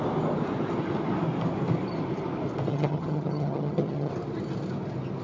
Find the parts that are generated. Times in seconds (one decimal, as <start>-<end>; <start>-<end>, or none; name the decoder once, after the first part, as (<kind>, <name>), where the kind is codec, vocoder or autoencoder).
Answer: 2.7-4.1 (vocoder, HiFi-GAN)

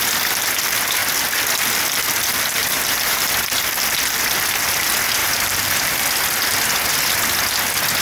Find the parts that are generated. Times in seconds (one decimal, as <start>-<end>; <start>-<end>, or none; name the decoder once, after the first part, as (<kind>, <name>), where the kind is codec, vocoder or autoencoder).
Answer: 2.6-3.3 (vocoder, BigVGAN v2); 5.2-6.0

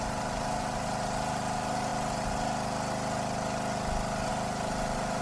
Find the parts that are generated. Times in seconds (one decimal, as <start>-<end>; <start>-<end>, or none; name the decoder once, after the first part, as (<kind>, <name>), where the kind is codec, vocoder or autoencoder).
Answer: 0.0-1.9 (vocoder, BigVGAN v2); 4.3-5.2